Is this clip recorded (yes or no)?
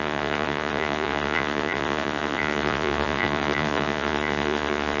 no